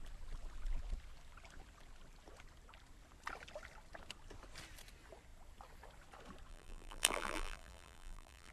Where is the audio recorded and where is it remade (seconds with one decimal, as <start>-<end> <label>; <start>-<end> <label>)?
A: 0.0-6.5 recorded; 6.5-8.5 remade